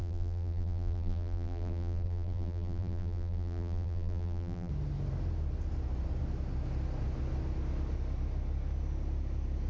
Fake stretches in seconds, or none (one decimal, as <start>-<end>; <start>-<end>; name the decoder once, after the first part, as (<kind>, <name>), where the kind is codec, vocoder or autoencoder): 0.0-4.7 (vocoder, BigVGAN v2)